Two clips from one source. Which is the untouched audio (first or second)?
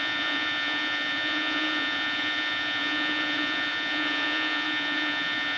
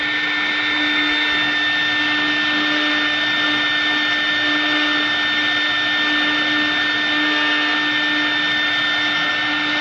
second